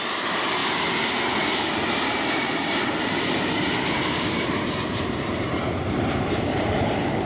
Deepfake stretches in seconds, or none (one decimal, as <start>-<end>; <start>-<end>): 0.0-0.6; 2.2-7.3